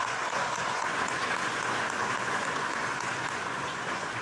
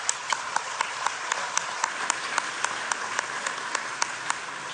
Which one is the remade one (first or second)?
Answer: first